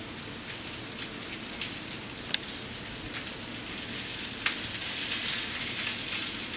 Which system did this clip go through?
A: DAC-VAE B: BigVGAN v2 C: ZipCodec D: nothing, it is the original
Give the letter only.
D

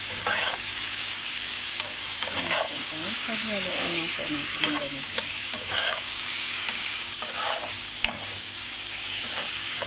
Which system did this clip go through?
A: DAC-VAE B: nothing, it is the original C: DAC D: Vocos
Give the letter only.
C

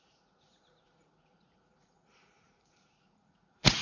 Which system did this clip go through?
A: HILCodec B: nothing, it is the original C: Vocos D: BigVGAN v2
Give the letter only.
C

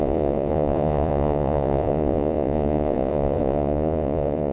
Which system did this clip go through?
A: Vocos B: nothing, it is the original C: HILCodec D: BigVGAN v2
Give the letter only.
A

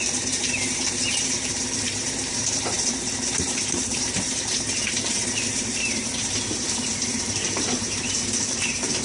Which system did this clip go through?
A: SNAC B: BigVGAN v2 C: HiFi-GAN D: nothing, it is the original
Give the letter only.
B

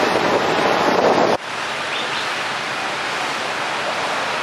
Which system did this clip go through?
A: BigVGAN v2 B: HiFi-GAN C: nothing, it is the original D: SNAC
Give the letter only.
C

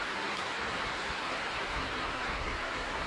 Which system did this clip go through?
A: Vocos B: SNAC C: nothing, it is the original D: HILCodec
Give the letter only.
B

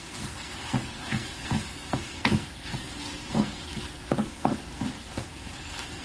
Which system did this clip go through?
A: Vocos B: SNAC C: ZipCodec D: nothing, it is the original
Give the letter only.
B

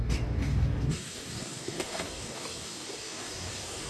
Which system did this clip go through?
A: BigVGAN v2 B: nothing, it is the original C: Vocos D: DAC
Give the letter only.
D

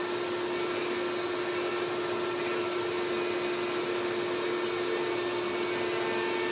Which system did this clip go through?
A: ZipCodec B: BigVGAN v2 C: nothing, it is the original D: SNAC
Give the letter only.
C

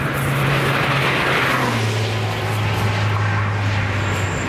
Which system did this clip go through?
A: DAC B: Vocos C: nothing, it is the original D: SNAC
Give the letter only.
C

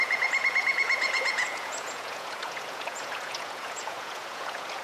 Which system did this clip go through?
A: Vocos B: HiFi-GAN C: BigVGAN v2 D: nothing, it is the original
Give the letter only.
A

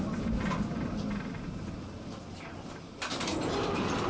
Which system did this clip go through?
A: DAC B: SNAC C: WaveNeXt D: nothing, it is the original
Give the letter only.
D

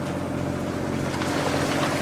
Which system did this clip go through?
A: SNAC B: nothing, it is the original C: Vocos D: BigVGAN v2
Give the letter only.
B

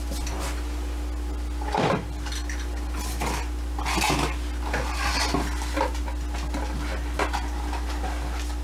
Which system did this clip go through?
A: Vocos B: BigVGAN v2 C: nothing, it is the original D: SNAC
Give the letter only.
C